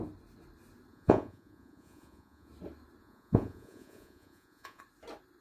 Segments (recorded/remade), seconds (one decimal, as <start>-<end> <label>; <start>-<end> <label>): 0.0-0.9 recorded; 0.9-2.5 remade; 2.5-3.0 recorded; 3.0-4.8 remade; 4.8-5.4 recorded